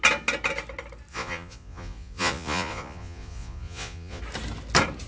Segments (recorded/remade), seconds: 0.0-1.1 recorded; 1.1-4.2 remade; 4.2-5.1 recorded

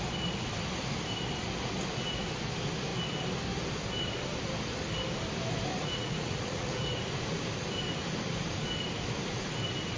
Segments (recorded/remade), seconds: 0.0-5.7 recorded; 5.7-6.8 remade; 6.8-10.0 recorded

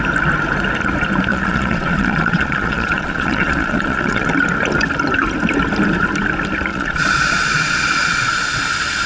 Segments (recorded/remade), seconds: 0.0-1.3 recorded; 1.3-4.3 remade; 4.3-6.7 recorded; 6.7-8.3 remade; 8.3-9.1 recorded

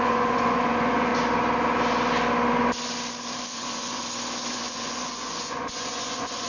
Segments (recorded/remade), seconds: 0.0-1.1 remade; 1.1-3.4 recorded; 3.4-4.0 remade; 4.0-4.5 recorded; 4.5-6.5 remade

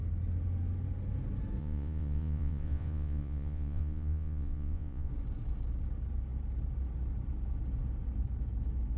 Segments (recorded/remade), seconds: 0.0-1.6 recorded; 1.6-5.1 remade; 5.1-9.0 recorded

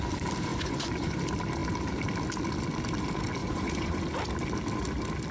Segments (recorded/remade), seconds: 0.0-0.5 recorded; 0.5-1.2 remade; 1.2-3.4 recorded; 3.4-4.0 remade; 4.0-5.3 recorded